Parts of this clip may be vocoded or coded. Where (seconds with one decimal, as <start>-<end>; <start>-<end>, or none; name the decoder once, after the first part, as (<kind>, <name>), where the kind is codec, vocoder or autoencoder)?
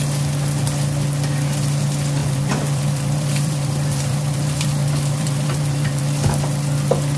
2.2-6.0 (vocoder, BigVGAN v2)